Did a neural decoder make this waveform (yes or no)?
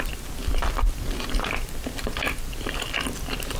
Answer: no